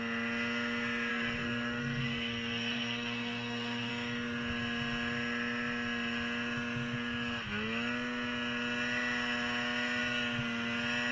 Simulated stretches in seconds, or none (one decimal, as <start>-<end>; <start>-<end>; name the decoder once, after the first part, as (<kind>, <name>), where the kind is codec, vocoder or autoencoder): 1.1-3.9 (codec, SNAC)